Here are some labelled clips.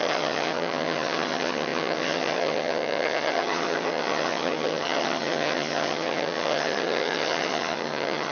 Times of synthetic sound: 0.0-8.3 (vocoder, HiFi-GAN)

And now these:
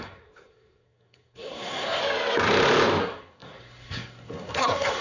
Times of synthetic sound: 0.0-2.0 (codec, SNAC); 3.0-5.0